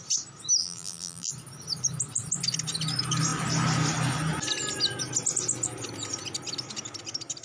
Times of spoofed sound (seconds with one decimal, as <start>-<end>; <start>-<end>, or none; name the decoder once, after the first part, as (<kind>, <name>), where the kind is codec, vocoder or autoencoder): 0.6-1.3 (vocoder, BigVGAN v2)